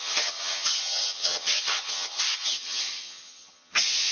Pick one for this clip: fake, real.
fake